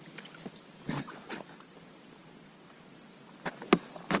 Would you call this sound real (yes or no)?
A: yes